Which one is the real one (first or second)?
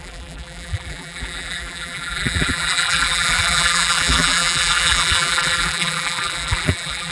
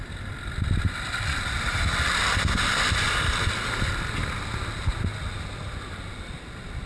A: second